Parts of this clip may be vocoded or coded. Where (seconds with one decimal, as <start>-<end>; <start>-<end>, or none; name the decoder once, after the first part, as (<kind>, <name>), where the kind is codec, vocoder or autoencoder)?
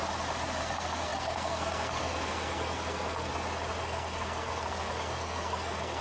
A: 0.6-3.3 (codec, SNAC); 3.8-6.0